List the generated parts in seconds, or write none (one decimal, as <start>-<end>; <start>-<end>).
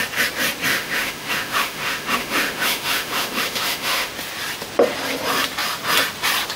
0.7-4.1